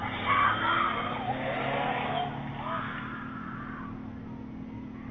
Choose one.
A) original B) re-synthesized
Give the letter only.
A